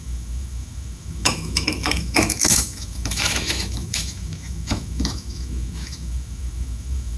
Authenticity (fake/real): fake